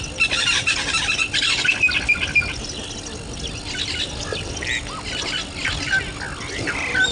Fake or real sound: real